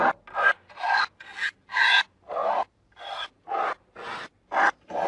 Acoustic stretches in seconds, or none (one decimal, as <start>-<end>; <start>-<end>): 0.0-1.3; 1.8-5.1